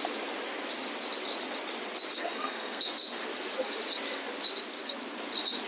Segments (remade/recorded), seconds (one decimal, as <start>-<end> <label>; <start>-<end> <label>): 0.0-2.1 recorded; 2.1-3.2 remade; 3.2-5.7 recorded